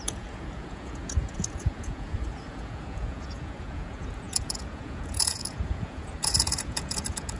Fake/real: fake